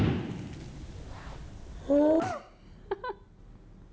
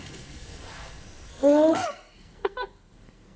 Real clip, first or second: first